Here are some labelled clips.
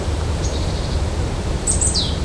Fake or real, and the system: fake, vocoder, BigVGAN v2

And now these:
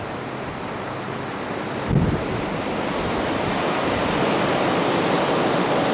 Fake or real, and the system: real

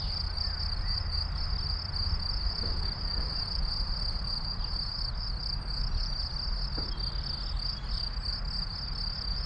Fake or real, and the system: real